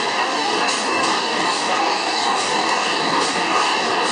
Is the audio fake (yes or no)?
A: yes